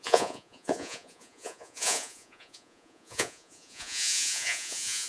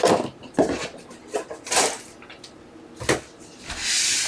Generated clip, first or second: first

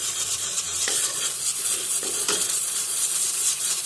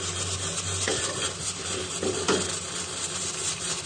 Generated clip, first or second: first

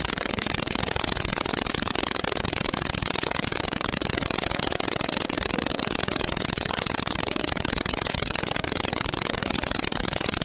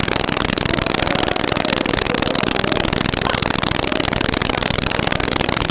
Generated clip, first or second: first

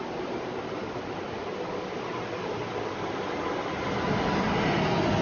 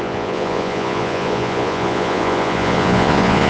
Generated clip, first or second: second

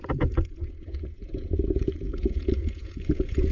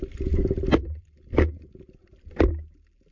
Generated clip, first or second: first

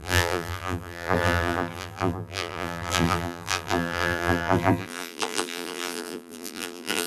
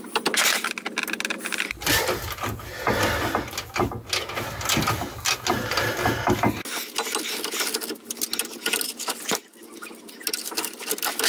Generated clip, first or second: first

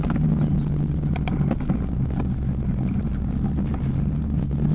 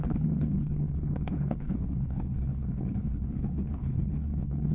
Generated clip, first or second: second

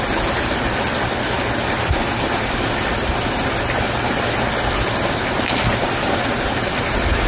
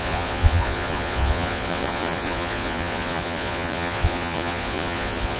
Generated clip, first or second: second